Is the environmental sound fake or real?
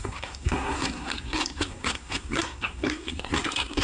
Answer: fake